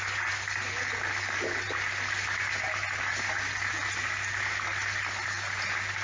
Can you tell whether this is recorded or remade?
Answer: recorded